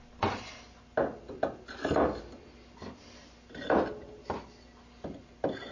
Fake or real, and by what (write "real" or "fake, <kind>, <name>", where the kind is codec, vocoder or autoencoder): real